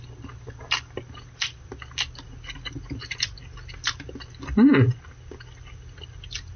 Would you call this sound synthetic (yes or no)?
no